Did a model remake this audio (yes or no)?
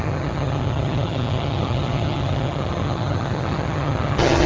yes